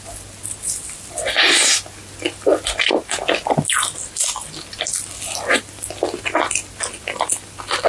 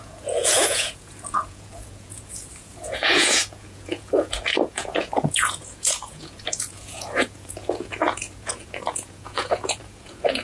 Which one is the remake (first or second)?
second